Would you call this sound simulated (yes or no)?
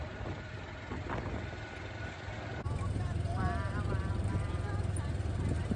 no